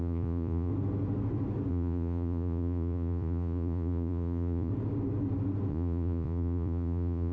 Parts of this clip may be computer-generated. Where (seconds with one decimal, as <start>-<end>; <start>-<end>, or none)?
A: 0.0-0.7; 1.7-4.7; 5.7-7.3

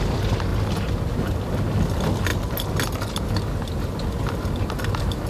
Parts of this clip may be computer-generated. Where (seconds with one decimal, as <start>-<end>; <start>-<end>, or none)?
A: none

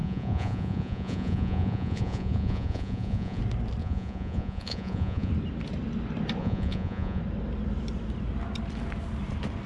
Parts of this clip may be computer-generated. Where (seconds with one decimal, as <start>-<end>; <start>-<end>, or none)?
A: 0.0-3.4; 3.8-5.3; 6.4-7.2

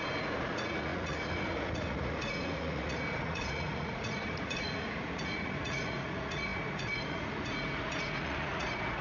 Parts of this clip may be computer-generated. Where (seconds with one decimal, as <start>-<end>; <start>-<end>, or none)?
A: 0.0-9.0

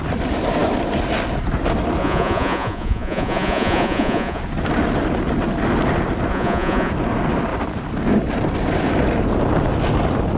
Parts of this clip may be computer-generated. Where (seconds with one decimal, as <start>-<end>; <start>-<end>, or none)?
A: 2.0-4.4; 6.3-6.9

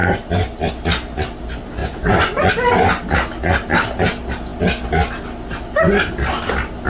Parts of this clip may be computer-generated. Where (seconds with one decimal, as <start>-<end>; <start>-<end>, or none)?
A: 1.8-2.5

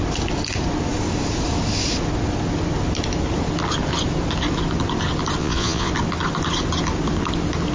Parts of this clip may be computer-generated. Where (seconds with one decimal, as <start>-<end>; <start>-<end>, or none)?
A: 5.4-5.9

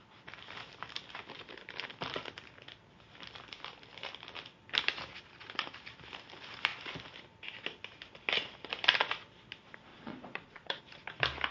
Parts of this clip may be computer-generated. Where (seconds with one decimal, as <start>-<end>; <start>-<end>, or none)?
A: 9.9-10.8